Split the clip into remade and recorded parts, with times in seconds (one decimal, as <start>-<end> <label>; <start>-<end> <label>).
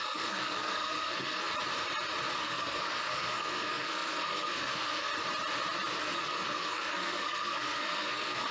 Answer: 0.0-1.5 remade; 1.5-2.4 recorded; 2.4-5.1 remade; 5.1-6.0 recorded; 6.0-8.5 remade